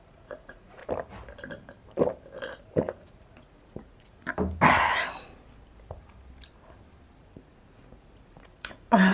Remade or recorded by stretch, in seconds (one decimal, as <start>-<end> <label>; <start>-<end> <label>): 0.0-0.8 remade; 0.8-2.6 recorded; 2.6-4.2 remade; 4.2-7.2 recorded; 7.2-9.1 remade